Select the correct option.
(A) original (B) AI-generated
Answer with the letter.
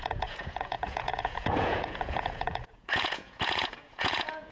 B